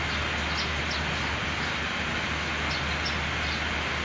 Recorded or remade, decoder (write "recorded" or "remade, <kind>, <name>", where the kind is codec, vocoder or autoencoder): recorded